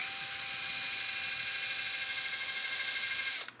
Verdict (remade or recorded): recorded